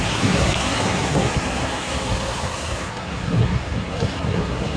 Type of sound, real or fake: fake